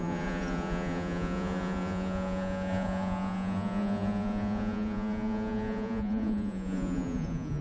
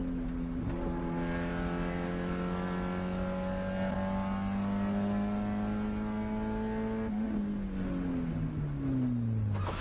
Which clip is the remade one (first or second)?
first